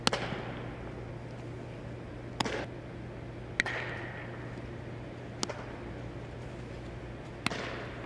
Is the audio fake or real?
real